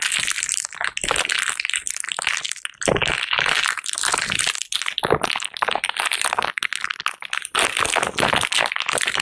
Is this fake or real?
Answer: real